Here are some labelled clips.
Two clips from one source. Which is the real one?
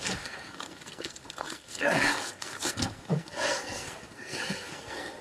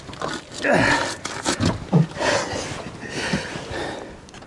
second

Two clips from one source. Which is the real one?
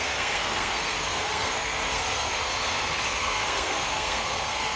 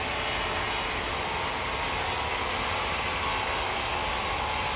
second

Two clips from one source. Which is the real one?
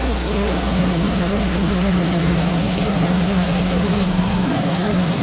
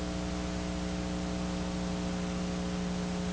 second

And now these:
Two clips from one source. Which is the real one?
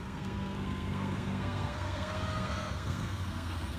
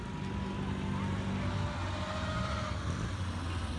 second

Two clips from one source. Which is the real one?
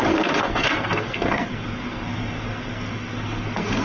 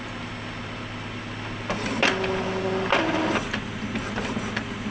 second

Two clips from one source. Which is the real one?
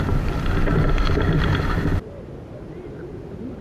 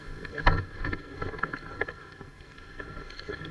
first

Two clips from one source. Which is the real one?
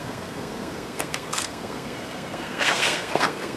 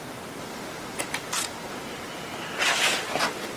second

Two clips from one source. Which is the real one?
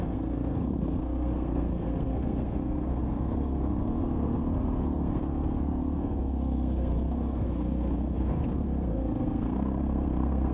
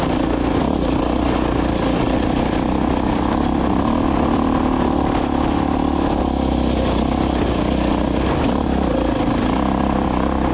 second